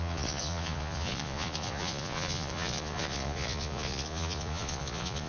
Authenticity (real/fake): fake